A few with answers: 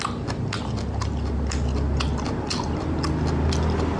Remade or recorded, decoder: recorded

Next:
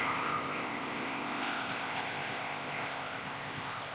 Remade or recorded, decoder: remade, codec, ZipCodec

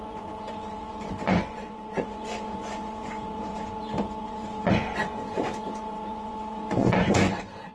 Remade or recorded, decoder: remade, vocoder, Vocos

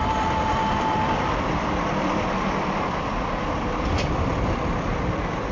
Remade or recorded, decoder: remade, vocoder, BigVGAN v2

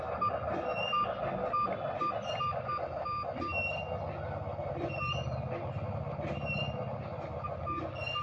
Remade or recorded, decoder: recorded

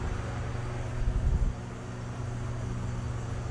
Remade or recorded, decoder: recorded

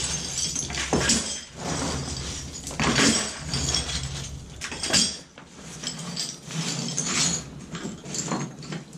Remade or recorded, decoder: recorded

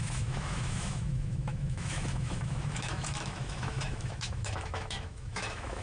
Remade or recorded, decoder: remade, autoencoder, DAC-VAE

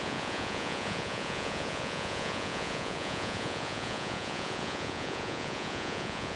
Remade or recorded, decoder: remade, vocoder, Vocos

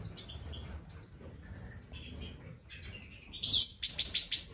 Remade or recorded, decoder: recorded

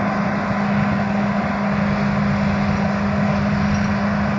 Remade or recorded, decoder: recorded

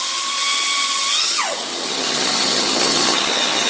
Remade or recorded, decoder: remade, vocoder, HiFi-GAN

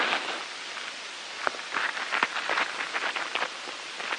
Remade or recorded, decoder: recorded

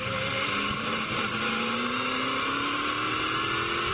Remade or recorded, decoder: recorded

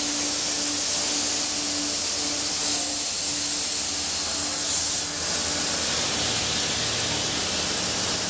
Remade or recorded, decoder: recorded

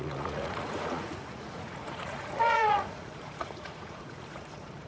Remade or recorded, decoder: remade, vocoder, Vocos